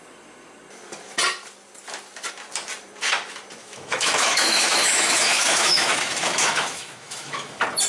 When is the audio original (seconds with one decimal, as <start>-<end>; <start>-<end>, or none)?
0.0-3.6; 7.5-7.9